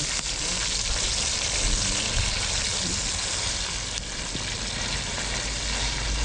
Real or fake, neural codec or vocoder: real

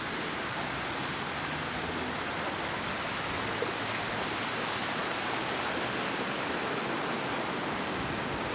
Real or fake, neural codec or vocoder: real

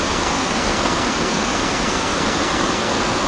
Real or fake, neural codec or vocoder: fake, codec, SNAC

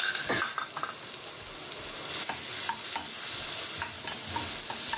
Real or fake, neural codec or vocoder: real